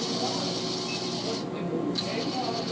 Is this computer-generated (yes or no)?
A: no